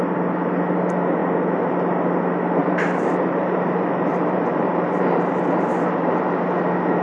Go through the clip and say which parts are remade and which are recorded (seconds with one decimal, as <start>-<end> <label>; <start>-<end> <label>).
0.0-2.6 recorded; 2.6-6.2 remade; 6.2-7.0 recorded